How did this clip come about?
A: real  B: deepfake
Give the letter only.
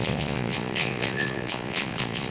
B